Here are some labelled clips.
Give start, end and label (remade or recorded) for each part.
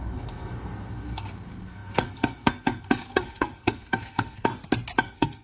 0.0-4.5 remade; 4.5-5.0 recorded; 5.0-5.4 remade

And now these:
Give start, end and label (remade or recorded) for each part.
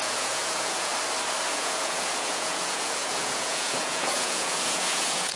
0.0-0.9 remade; 0.9-1.5 recorded; 1.5-5.4 remade